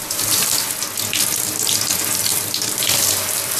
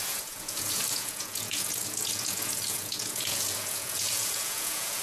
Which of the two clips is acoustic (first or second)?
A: first